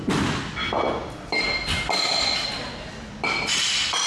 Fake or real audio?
real